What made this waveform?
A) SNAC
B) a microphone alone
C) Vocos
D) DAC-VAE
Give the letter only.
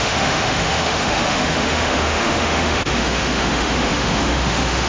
D